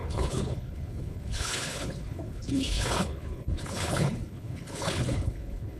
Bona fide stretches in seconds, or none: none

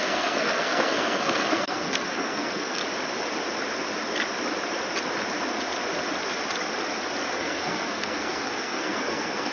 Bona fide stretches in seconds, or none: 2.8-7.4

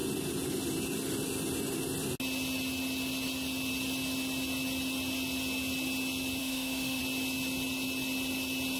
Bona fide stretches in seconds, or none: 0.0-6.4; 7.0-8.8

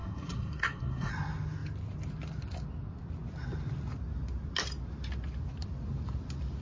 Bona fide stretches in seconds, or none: 1.1-6.6